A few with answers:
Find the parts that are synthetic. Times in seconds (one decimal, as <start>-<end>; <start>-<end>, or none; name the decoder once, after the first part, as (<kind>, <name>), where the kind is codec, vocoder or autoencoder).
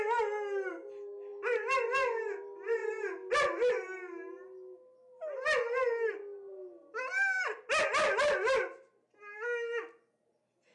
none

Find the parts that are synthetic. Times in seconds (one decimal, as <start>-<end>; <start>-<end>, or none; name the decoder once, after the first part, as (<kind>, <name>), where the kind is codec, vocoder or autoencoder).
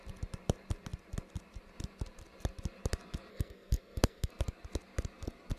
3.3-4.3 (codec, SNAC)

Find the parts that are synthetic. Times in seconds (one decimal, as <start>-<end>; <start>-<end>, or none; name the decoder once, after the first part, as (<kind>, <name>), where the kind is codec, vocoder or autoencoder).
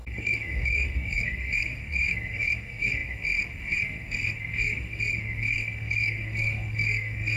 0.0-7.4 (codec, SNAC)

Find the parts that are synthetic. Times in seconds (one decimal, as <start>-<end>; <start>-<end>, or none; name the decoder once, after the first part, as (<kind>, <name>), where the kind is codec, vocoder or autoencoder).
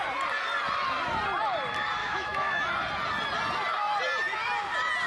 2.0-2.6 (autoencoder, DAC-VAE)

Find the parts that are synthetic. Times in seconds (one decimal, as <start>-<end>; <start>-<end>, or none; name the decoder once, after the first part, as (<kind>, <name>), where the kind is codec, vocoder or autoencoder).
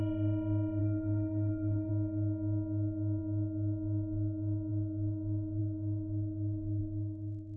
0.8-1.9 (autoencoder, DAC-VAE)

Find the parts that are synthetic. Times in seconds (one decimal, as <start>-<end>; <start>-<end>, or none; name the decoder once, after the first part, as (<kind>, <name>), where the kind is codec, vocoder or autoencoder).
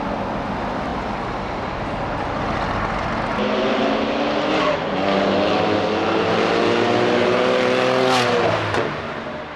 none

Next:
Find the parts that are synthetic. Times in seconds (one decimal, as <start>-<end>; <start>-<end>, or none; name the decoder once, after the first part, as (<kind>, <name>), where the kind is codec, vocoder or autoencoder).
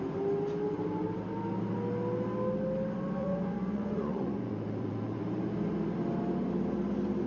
3.2-5.2 (vocoder, Vocos)